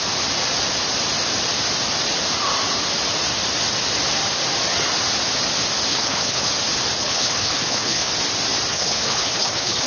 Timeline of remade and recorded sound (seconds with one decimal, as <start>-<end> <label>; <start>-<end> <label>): 0.0-5.9 recorded; 5.9-6.5 remade; 6.5-7.0 recorded; 7.0-8.1 remade; 8.1-8.7 recorded; 8.7-9.9 remade